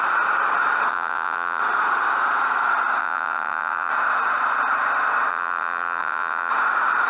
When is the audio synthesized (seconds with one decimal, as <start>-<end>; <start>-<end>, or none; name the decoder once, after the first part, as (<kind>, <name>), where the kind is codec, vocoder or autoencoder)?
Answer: 0.9-1.6 (vocoder, WaveNeXt); 3.0-3.9; 5.3-6.5